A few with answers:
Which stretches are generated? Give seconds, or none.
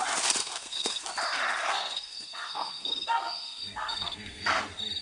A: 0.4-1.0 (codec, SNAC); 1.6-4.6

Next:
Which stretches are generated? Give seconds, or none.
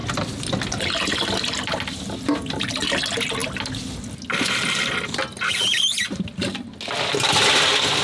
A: none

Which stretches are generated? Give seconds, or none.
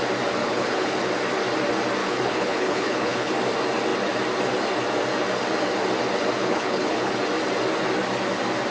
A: 0.4-1.1 (codec, HILCodec); 2.0-3.3; 6.4-7.1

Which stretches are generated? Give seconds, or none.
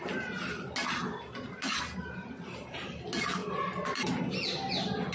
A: none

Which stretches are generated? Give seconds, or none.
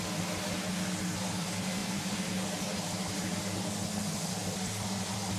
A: 1.8-3.7 (vocoder, BigVGAN v2)